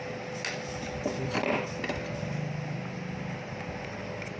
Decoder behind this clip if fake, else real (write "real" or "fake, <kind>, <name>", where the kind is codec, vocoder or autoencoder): real